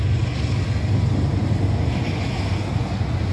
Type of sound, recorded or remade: recorded